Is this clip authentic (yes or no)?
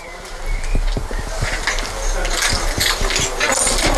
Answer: yes